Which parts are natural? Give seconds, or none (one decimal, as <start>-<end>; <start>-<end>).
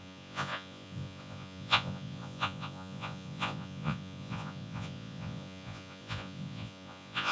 none